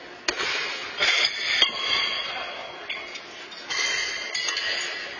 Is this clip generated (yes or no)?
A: no